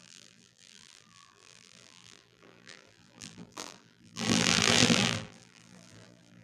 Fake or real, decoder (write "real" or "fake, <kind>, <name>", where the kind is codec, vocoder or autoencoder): fake, vocoder, BigVGAN v2